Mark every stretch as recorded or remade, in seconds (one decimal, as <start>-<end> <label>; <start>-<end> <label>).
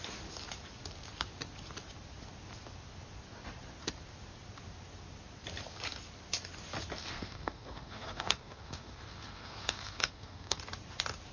0.0-7.0 recorded; 7.0-10.6 remade; 10.6-11.3 recorded